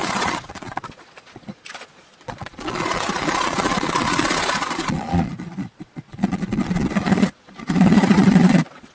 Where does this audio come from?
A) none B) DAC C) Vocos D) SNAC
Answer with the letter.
C